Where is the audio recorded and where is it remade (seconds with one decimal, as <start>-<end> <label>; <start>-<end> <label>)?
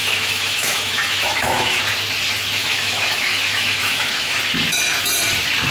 0.0-1.8 remade; 1.8-2.6 recorded; 2.6-4.4 remade; 4.4-5.7 recorded